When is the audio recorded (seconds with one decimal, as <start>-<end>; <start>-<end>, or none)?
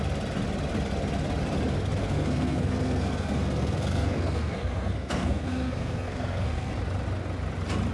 0.0-2.0; 6.7-7.9